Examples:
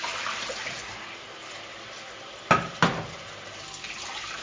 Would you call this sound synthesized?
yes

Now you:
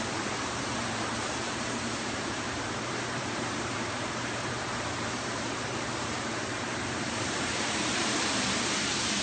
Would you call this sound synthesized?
yes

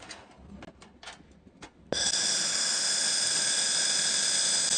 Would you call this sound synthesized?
no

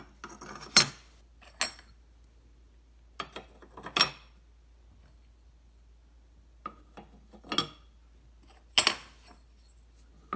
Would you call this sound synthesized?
no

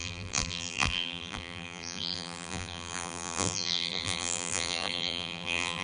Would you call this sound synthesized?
yes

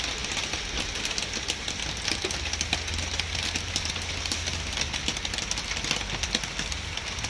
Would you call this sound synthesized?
no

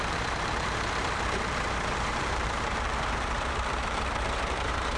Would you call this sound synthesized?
yes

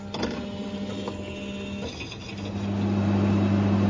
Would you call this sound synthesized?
no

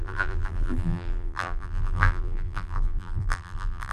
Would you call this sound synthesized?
yes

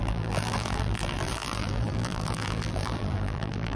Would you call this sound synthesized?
yes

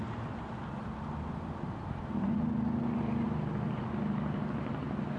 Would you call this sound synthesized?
no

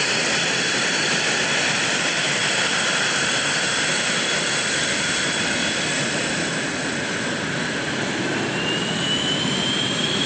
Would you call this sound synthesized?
yes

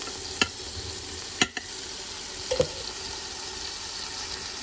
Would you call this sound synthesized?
no